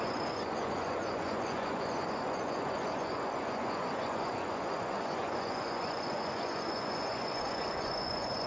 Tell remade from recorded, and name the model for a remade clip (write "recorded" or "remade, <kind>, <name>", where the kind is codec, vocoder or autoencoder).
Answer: remade, vocoder, Vocos